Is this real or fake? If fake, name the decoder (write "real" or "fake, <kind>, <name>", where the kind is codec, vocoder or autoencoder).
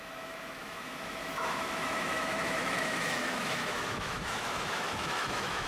fake, autoencoder, DAC-VAE